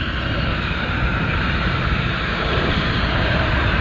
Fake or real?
fake